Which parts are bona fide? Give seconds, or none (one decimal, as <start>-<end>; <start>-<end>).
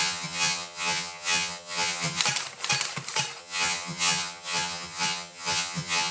2.2-3.4